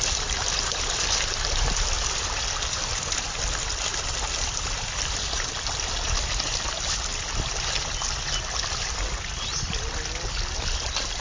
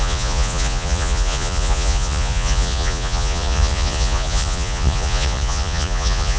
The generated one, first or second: second